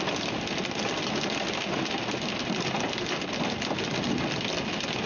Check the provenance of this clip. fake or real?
real